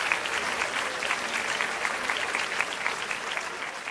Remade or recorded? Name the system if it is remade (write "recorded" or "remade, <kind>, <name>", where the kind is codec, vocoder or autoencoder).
recorded